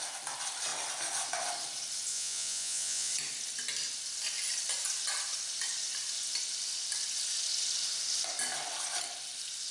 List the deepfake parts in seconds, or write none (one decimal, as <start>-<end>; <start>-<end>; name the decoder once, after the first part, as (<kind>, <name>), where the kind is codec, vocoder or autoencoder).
2.1-3.1 (vocoder, Vocos)

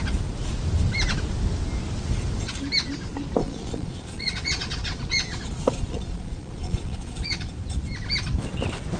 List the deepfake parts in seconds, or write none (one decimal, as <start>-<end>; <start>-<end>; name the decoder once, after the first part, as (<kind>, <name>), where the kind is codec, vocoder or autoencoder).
3.4-7.5 (vocoder, Vocos)